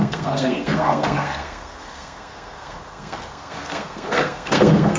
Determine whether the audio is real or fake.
fake